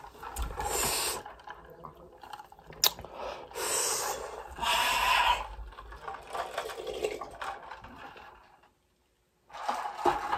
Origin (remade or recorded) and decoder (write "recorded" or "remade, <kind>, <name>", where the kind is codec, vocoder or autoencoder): recorded